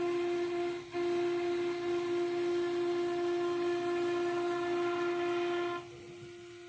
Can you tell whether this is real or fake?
real